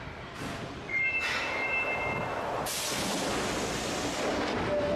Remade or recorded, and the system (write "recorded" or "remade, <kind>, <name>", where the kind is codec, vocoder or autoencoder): recorded